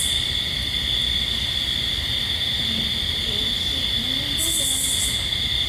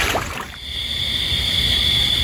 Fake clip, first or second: second